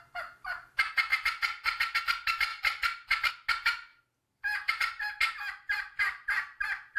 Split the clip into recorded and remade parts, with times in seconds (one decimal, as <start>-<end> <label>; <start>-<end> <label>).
0.0-2.5 recorded; 2.5-3.3 remade; 3.3-7.0 recorded